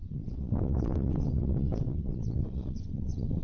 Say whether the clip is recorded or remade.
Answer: remade